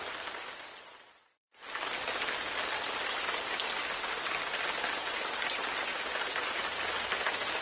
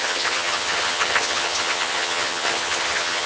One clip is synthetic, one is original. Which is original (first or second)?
first